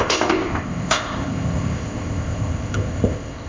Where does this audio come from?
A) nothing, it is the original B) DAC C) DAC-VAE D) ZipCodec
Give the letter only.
D